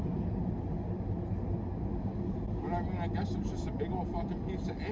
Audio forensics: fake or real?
real